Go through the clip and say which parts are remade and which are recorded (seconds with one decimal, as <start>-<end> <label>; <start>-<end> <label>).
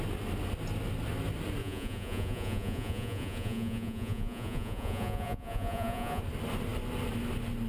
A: 0.0-1.6 recorded; 1.6-6.2 remade; 6.2-7.7 recorded